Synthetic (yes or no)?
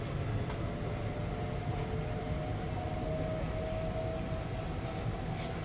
no